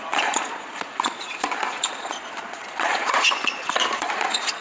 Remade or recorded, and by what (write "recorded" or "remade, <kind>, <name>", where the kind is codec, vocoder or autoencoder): remade, vocoder, Vocos